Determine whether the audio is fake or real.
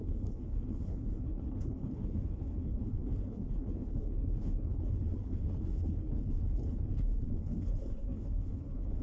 fake